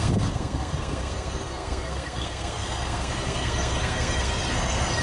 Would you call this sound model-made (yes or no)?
yes